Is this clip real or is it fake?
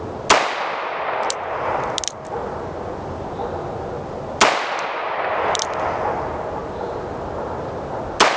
real